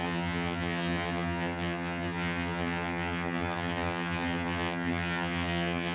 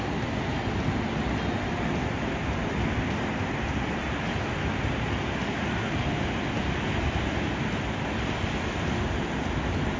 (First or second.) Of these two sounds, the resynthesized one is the first